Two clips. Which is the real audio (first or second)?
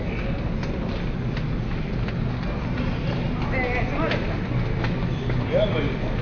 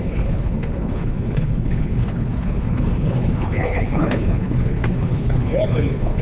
first